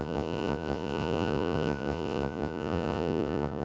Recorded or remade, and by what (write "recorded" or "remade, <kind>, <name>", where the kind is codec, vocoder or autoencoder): remade, vocoder, Vocos